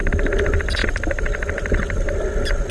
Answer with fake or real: real